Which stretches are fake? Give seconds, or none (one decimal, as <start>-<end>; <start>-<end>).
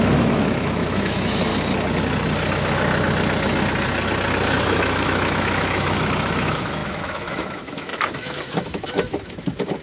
0.0-1.5; 4.6-9.8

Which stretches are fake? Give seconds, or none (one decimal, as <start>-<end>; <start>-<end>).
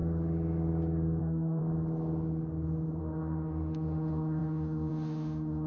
1.2-1.6; 3.0-5.7